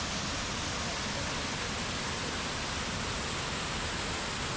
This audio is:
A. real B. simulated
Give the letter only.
A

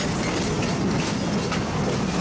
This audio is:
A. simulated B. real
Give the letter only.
B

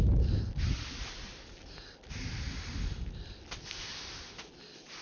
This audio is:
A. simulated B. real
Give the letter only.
B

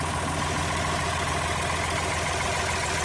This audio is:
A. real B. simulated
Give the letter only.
A